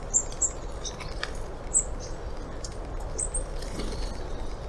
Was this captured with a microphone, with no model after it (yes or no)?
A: yes